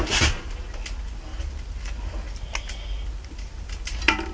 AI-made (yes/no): no